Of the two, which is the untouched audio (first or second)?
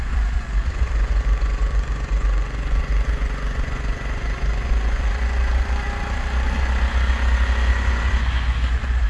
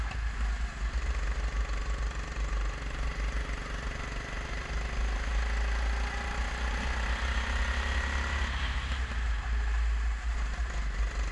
second